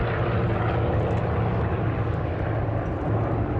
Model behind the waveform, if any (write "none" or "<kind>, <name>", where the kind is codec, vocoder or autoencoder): none